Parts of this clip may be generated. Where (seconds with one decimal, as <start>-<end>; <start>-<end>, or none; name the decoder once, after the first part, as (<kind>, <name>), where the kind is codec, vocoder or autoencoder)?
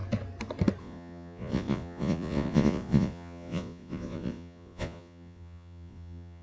0.8-6.4 (vocoder, Vocos)